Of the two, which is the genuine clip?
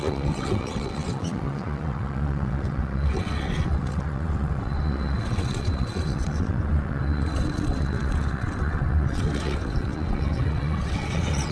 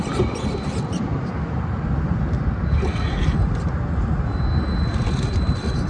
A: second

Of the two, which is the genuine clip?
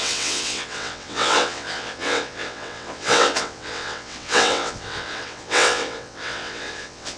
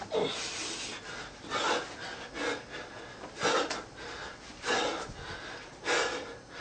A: second